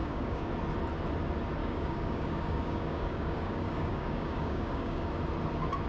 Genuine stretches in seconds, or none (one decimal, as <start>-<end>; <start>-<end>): 0.5-1.6; 5.1-5.9